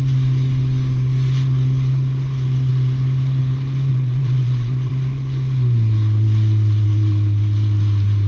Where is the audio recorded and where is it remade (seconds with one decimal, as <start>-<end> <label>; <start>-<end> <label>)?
0.0-3.9 recorded; 3.9-4.9 remade; 4.9-8.3 recorded